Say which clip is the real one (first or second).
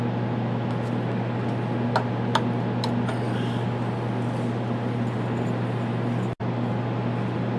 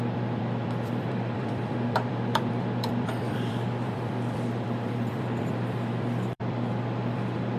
first